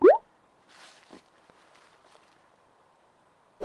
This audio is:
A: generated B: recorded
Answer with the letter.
A